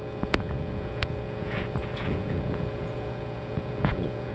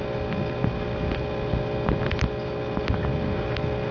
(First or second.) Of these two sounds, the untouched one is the second